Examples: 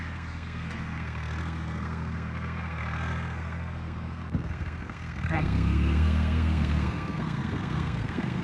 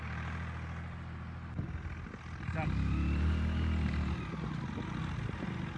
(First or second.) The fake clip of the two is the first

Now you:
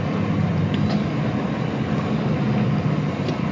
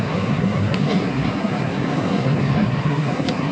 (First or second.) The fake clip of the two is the second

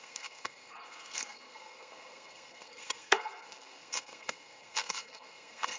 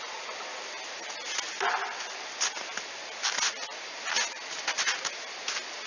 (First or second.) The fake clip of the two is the first